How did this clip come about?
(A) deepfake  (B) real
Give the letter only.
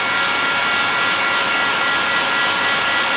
B